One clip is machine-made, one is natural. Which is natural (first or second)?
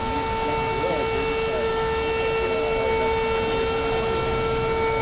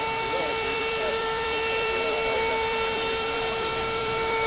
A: first